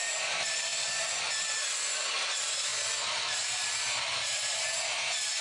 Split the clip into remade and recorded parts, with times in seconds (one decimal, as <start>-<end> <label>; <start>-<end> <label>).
0.0-5.4 recorded

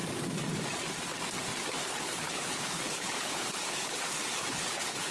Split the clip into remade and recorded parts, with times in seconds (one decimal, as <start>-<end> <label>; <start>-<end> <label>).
0.0-1.8 recorded; 1.8-5.1 remade

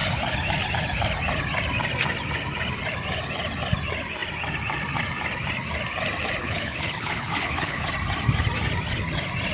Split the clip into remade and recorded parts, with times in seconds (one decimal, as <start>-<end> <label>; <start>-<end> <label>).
0.0-6.4 recorded; 6.4-7.9 remade; 7.9-9.5 recorded

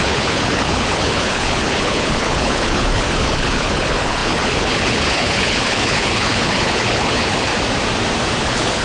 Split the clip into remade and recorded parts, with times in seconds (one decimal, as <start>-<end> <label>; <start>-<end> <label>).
0.0-7.5 remade; 7.5-8.4 recorded; 8.4-8.8 remade

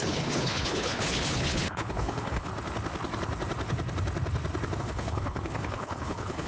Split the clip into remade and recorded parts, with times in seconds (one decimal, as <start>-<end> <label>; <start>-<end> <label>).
0.0-2.5 remade; 2.5-4.8 recorded; 4.8-6.5 remade

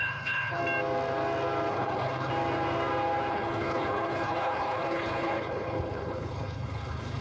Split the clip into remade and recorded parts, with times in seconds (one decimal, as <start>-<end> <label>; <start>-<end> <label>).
0.0-0.6 remade; 0.6-1.7 recorded; 1.7-2.3 remade; 2.3-3.3 recorded; 3.3-7.2 remade

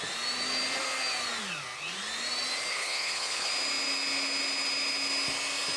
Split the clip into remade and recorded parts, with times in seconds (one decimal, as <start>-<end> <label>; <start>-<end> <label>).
0.0-2.7 recorded; 2.7-3.5 remade; 3.5-5.8 recorded

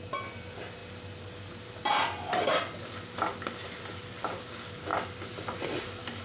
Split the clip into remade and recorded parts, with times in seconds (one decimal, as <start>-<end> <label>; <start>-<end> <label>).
0.0-6.2 recorded